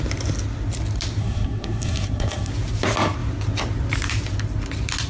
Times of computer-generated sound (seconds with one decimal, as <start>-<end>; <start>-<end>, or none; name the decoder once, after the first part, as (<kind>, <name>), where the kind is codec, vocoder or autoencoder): 1.2-2.5 (codec, SNAC)